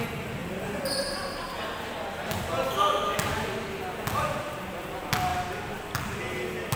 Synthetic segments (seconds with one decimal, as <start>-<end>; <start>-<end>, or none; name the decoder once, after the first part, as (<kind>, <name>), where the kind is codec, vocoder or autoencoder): none